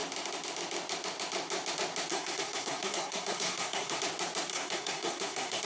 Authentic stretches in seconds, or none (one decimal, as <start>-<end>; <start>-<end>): 0.0-2.1; 4.0-4.5